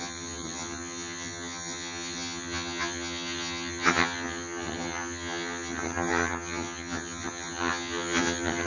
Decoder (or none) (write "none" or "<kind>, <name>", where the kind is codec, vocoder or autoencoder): vocoder, HiFi-GAN